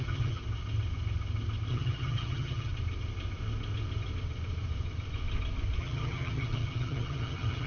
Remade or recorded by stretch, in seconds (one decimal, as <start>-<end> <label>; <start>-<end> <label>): 0.0-0.4 remade; 0.4-1.7 recorded; 1.7-2.7 remade; 2.7-5.8 recorded; 5.8-7.7 remade